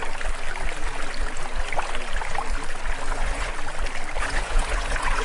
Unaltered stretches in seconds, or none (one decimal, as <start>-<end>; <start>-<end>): 0.0-3.1; 3.5-4.2